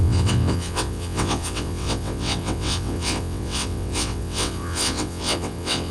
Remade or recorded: remade